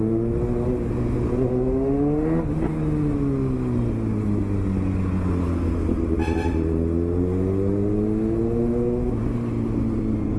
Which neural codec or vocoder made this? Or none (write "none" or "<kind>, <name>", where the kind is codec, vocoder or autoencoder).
none